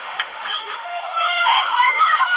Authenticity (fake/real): fake